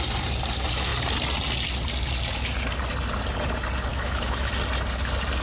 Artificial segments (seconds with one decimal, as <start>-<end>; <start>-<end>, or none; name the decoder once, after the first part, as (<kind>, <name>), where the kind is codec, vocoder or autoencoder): 3.9-4.5 (autoencoder, DAC-VAE)